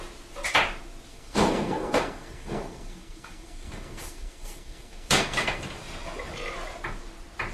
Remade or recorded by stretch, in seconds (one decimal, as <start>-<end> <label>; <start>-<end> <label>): 0.0-1.1 recorded; 1.1-5.6 remade; 5.6-7.5 recorded